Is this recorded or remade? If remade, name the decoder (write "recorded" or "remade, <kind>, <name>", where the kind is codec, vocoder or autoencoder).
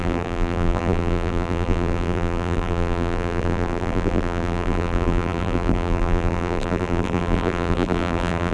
remade, vocoder, BigVGAN v2